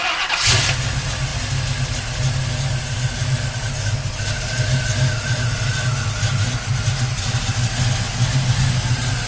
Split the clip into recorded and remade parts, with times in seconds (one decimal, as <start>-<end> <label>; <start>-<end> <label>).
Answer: 0.0-9.3 recorded